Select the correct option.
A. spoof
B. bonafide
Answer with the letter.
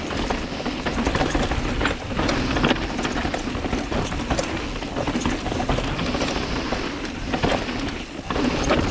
B